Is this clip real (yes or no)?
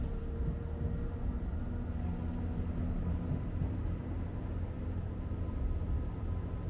yes